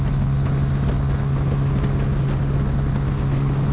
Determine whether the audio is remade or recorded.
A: recorded